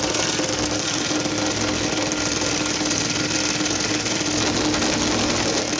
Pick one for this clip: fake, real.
real